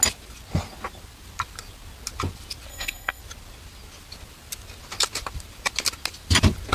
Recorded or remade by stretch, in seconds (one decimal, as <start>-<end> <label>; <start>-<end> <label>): 0.0-2.7 recorded; 2.7-3.2 remade; 3.2-6.7 recorded